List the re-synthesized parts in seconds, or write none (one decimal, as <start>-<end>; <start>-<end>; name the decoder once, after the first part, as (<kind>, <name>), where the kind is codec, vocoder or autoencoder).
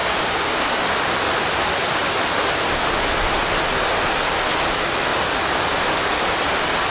0.0-0.8 (codec, DAC)